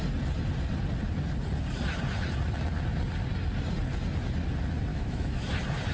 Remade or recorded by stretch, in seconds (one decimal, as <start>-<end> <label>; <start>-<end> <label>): 0.0-4.9 recorded; 4.9-5.5 remade; 5.5-5.9 recorded